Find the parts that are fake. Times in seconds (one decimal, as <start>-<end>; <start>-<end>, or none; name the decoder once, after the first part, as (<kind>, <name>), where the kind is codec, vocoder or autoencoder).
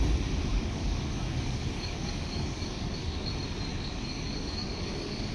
0.5-3.3 (codec, DAC); 3.7-5.3